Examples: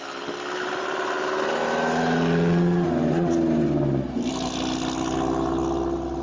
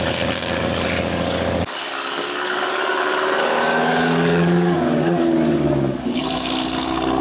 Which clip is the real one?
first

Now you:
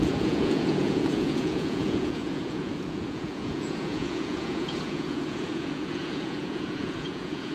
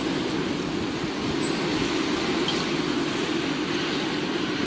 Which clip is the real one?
second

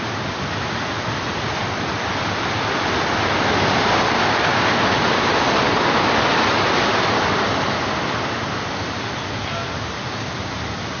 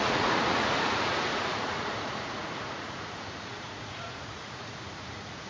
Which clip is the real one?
first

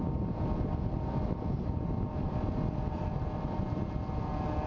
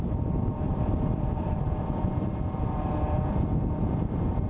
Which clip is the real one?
first